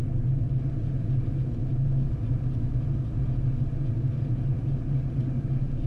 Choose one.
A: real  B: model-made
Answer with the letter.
A